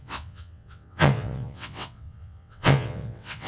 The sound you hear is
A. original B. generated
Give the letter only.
B